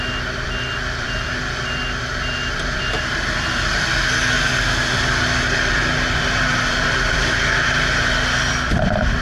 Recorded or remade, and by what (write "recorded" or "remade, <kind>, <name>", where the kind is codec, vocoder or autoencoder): remade, vocoder, BigVGAN v2